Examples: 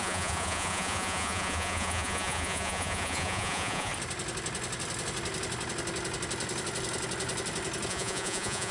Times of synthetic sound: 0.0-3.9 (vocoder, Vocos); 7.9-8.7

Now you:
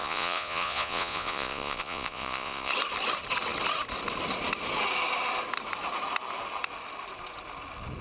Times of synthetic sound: 0.0-2.7 (vocoder, Vocos)

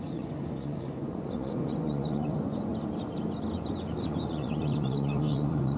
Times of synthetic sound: 0.0-2.7 (vocoder, Vocos); 3.5-5.8

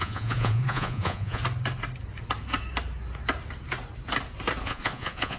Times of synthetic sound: 0.0-1.4 (vocoder, Vocos); 4.6-5.4